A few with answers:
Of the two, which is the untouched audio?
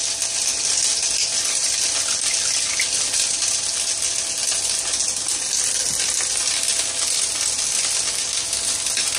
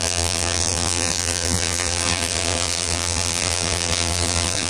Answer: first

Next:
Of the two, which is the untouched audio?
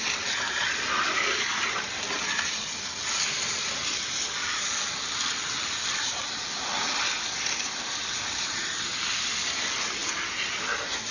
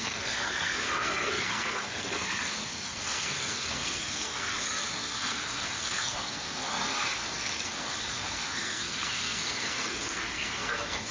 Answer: first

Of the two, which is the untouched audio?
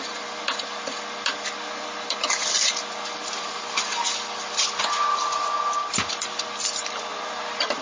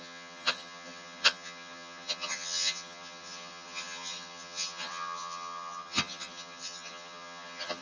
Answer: first